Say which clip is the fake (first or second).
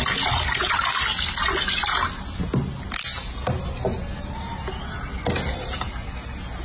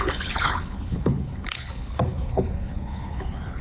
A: second